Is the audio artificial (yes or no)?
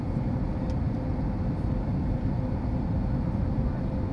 no